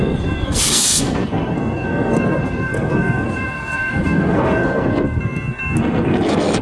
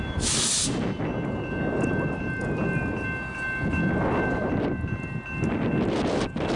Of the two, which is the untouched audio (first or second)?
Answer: second